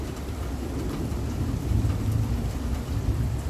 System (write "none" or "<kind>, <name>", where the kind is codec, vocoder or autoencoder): none